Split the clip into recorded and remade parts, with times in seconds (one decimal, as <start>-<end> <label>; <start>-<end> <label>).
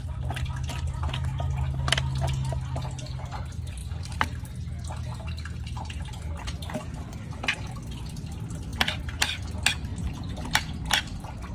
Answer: 0.0-11.5 recorded